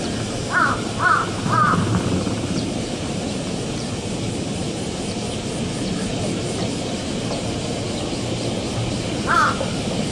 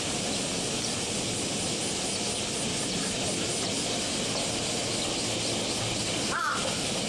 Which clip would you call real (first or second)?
second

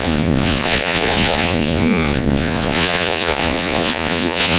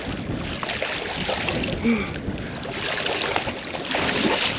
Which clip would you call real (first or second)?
second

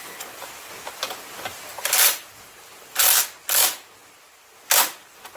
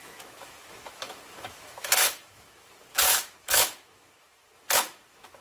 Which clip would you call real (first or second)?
first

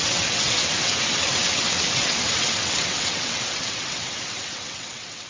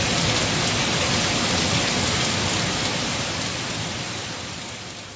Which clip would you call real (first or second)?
second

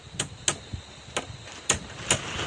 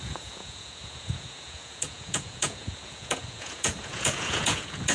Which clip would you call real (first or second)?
first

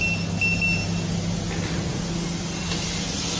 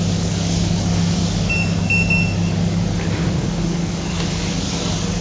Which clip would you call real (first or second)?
first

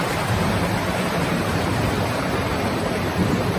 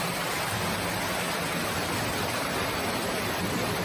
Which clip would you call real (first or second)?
second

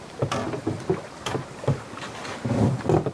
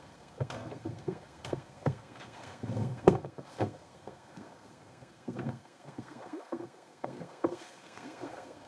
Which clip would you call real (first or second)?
first